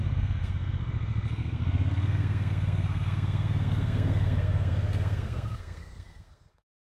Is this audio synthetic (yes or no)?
yes